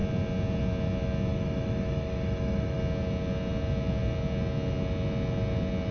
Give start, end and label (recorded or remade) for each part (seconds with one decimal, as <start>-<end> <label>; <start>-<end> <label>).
0.0-1.3 recorded; 1.3-2.8 remade; 2.8-5.9 recorded